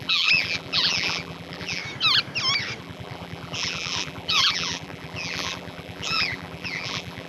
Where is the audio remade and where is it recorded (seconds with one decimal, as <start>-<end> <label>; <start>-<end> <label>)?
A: 0.0-1.8 remade; 1.8-2.8 recorded; 2.8-7.3 remade